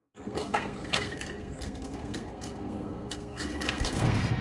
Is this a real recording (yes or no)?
no